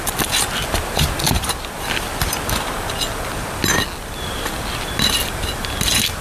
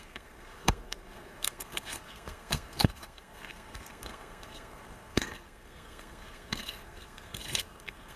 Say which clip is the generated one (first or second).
second